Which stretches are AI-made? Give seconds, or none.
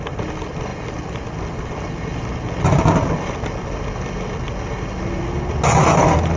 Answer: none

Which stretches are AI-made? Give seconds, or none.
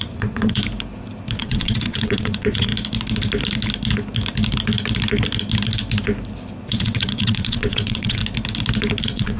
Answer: 0.0-0.6 (vocoder, WaveNeXt); 1.4-2.7; 6.6-8.2; 9.0-9.4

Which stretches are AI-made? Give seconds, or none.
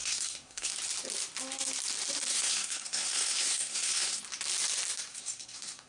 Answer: 0.0-0.7 (codec, SNAC); 2.3-4.2; 5.1-5.9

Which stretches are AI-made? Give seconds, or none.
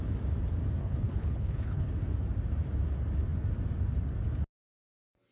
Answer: 0.8-1.9 (codec, HILCodec)